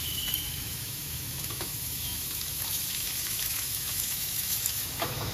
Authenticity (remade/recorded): remade